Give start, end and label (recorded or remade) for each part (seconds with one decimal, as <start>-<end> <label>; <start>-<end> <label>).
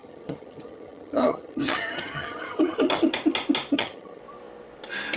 0.0-3.1 remade; 3.1-3.7 recorded; 3.7-4.2 remade; 4.2-5.2 recorded